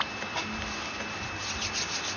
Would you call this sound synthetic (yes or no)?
yes